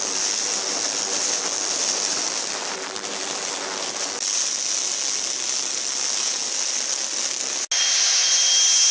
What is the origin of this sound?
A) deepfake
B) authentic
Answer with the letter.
B